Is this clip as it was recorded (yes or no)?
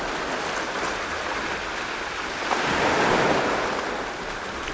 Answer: yes